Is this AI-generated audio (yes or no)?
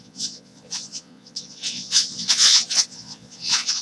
yes